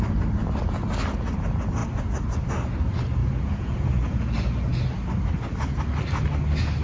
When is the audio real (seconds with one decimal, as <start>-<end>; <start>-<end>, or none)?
0.0-3.2; 4.3-6.8